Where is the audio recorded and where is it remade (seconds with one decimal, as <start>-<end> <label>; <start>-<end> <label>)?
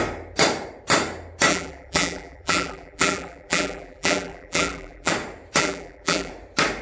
0.0-1.5 recorded; 1.5-5.1 remade; 5.1-5.6 recorded; 5.6-6.3 remade; 6.3-6.8 recorded